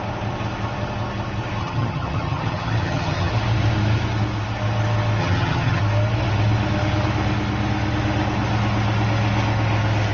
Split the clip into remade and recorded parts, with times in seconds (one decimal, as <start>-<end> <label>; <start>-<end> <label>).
0.0-1.6 recorded; 1.6-3.3 remade; 3.3-5.2 recorded; 5.2-5.8 remade; 5.8-10.1 recorded